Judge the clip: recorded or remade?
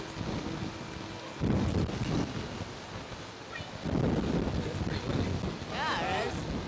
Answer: recorded